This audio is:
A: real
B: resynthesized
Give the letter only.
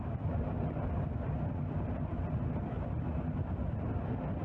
A